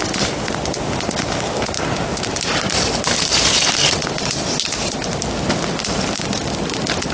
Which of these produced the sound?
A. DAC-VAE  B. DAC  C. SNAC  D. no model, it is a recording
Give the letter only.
D